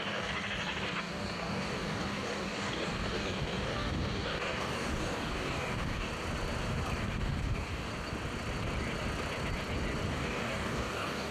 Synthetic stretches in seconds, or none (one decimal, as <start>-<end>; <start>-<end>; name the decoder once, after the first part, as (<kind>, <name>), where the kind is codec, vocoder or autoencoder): 0.0-6.1 (codec, DAC); 7.0-7.9; 10.1-11.3